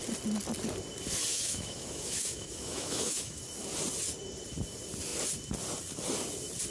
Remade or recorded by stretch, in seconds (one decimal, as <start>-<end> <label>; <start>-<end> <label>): 0.0-1.3 recorded; 1.3-3.4 remade; 3.4-6.7 recorded